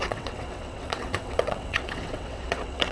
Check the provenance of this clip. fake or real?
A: fake